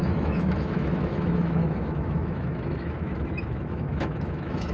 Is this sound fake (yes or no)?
yes